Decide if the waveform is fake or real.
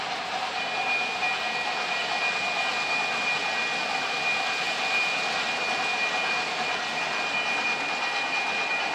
real